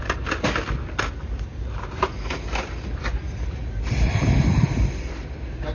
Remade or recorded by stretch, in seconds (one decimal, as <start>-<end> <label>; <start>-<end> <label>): 0.0-5.7 recorded